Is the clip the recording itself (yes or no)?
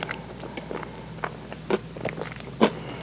yes